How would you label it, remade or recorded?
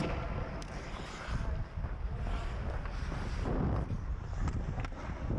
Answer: recorded